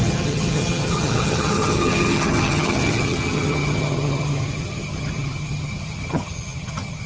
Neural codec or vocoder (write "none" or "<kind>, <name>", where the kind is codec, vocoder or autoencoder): vocoder, HiFi-GAN